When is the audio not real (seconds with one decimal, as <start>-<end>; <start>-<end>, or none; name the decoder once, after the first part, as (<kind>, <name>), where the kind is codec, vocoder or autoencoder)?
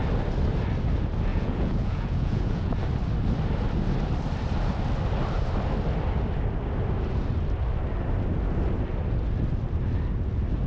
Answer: 1.3-2.8 (vocoder, Vocos)